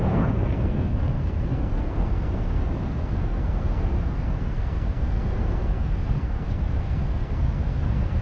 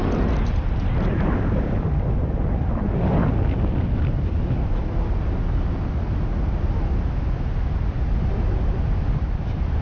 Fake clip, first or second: first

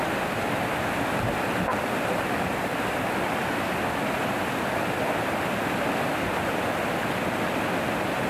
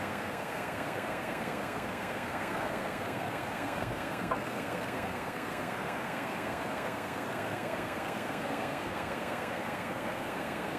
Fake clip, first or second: second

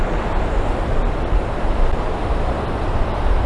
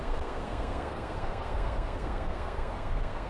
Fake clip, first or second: second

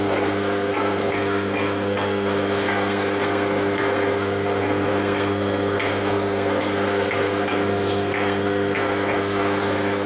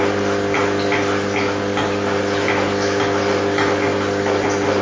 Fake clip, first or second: first